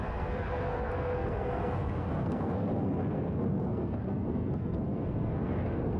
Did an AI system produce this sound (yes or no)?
yes